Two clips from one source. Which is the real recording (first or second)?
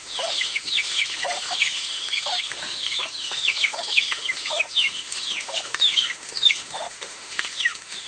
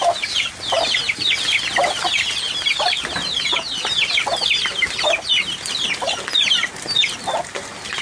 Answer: second